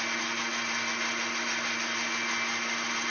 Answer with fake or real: real